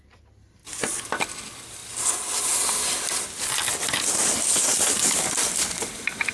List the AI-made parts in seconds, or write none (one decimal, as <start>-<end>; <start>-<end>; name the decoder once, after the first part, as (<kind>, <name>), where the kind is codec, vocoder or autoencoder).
4.7-5.5 (vocoder, BigVGAN v2)